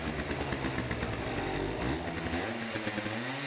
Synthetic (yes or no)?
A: no